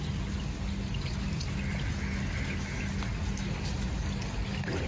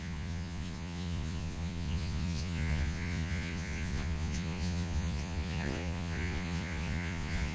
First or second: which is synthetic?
second